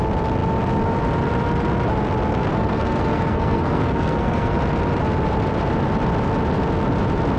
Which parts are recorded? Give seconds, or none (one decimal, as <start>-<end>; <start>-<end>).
0.0-2.3; 4.6-7.4